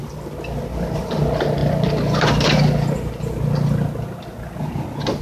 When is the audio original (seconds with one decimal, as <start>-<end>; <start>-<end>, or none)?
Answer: 0.0-5.2